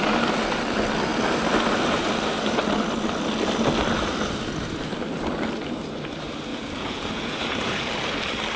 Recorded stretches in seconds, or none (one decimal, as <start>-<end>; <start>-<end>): 0.0-6.5; 7.9-8.6